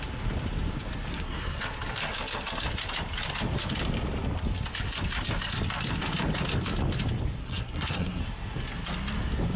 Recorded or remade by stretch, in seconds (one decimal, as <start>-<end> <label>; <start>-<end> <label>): 0.0-1.1 recorded; 1.1-1.6 remade; 1.6-7.4 recorded; 7.4-8.2 remade; 8.2-9.6 recorded